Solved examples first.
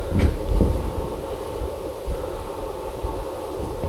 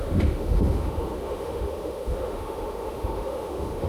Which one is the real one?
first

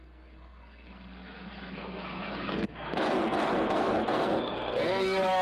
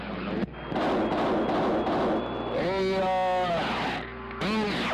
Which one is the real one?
second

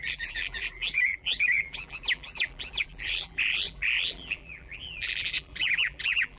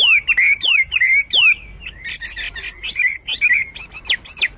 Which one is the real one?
second